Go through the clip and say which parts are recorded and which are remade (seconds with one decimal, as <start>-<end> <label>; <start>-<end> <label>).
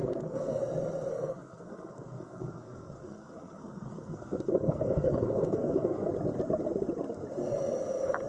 0.0-0.6 remade; 0.6-1.1 recorded; 1.1-6.1 remade; 6.1-8.3 recorded